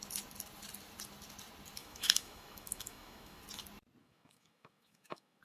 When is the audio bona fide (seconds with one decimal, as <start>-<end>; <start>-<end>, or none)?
0.0-1.8; 3.4-4.0